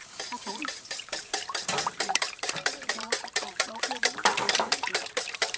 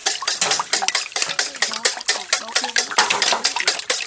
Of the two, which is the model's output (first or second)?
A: first